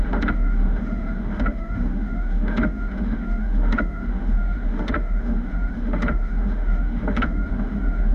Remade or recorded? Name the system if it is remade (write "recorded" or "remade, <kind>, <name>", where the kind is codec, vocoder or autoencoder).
remade, autoencoder, DAC-VAE